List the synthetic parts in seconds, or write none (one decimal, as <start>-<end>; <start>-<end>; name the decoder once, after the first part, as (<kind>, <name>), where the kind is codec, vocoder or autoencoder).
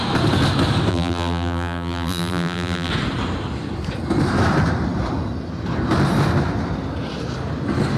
0.9-2.9 (vocoder, BigVGAN v2)